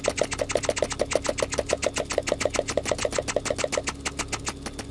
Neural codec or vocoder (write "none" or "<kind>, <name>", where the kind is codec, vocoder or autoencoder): none